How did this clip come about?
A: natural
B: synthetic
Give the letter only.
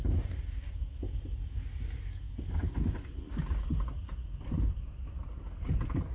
A